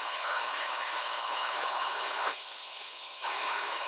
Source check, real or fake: fake